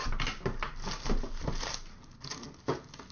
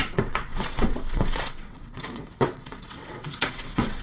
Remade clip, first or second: second